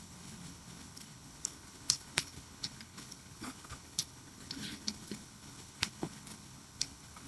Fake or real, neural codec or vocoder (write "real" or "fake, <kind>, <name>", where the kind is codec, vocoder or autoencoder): fake, codec, HILCodec